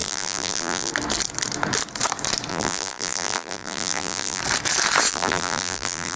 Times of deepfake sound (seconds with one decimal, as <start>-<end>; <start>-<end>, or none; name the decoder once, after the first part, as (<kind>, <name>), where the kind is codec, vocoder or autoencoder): 0.0-0.9 (vocoder, BigVGAN v2); 2.5-4.4; 5.1-6.2